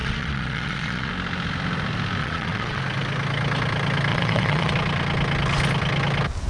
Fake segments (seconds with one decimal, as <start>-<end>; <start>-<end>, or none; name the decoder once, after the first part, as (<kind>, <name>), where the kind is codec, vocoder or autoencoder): 0.0-1.1 (vocoder, Vocos); 2.2-2.8; 4.1-4.7